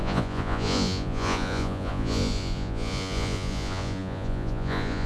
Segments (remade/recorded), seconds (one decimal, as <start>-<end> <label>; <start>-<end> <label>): 0.0-5.1 remade